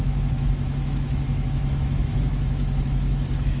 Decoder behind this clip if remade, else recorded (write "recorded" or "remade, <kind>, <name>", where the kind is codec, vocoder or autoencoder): remade, autoencoder, DAC-VAE